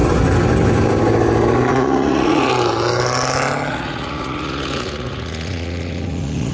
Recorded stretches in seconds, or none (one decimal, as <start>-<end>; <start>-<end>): 0.0-1.7; 2.5-3.7